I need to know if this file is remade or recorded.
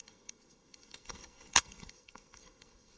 remade